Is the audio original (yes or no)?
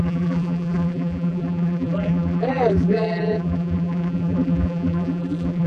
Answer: no